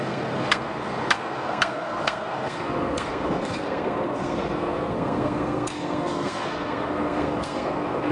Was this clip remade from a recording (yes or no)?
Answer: yes